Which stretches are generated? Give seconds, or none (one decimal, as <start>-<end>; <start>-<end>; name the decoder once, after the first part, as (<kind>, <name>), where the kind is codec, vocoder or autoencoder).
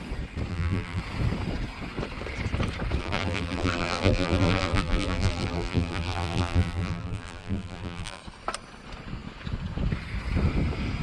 0.5-1.0 (vocoder, BigVGAN v2); 3.0-8.2